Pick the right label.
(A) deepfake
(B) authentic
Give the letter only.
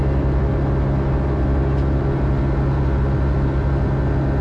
B